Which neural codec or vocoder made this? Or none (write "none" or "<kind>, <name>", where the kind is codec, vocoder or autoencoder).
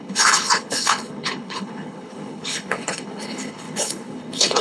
codec, HILCodec